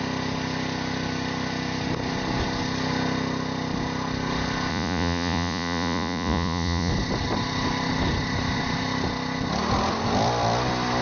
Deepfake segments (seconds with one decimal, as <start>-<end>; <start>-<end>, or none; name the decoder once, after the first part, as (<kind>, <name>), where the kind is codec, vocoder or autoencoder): 4.7-6.9 (vocoder, Vocos)